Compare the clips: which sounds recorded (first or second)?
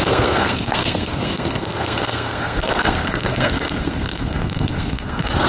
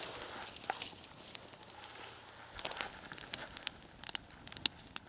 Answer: second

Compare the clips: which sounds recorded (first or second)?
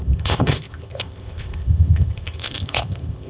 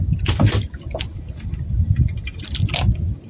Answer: second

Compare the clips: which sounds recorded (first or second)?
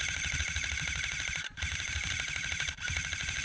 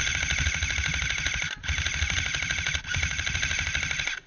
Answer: second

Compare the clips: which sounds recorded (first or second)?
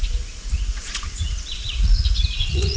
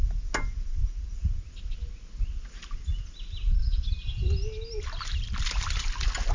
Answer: second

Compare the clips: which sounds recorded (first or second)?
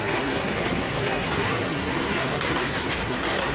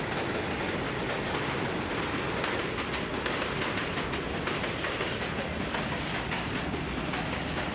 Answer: second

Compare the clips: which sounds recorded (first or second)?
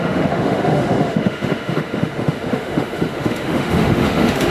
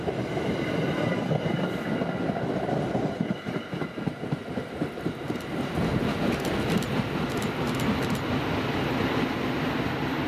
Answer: second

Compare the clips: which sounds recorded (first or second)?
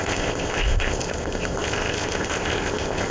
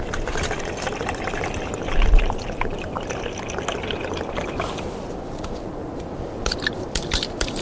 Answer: second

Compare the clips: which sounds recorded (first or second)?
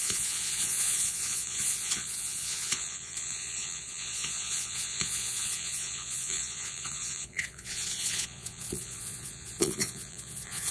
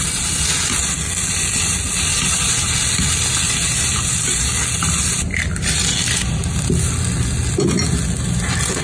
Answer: second